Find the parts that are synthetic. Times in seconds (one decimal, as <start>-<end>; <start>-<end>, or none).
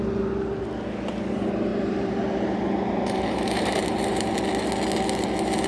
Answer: 1.7-4.3